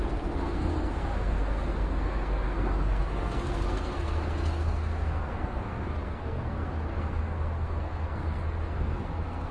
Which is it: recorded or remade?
remade